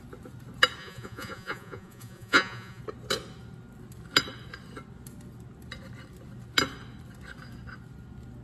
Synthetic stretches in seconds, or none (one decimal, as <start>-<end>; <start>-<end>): 0.8-2.8